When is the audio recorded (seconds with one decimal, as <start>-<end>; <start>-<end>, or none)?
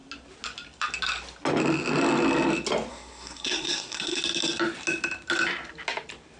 0.0-2.9; 4.2-6.4